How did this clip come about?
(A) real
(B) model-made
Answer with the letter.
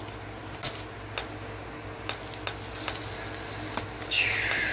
A